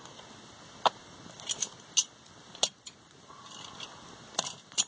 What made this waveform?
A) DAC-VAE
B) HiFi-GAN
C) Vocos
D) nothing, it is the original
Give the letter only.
D